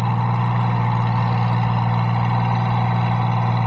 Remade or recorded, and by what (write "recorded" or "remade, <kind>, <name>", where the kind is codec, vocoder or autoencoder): recorded